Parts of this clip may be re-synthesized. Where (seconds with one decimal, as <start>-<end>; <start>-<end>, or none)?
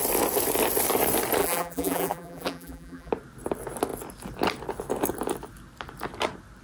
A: 1.4-3.1